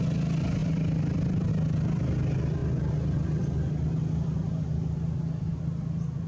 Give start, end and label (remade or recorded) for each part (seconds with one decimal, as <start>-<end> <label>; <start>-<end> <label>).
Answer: 0.0-6.3 recorded